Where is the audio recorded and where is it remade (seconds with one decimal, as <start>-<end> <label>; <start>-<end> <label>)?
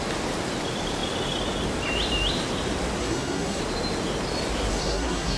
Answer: 0.0-3.0 recorded; 3.0-3.6 remade; 3.6-4.7 recorded; 4.7-5.4 remade